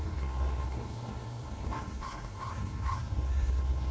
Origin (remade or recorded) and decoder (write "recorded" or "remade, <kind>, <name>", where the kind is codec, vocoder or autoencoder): remade, codec, SNAC